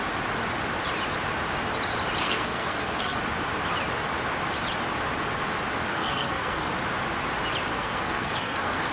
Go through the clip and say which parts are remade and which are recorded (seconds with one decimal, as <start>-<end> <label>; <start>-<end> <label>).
0.0-2.2 recorded; 2.2-3.2 remade; 3.2-5.9 recorded; 5.9-6.7 remade; 6.7-7.7 recorded; 7.7-8.9 remade